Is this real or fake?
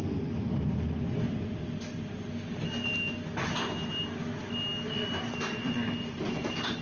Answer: real